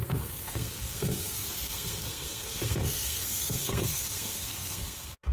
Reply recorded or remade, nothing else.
remade